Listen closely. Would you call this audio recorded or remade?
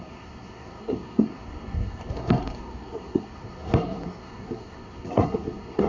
remade